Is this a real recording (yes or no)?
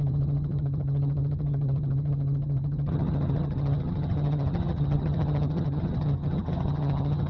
no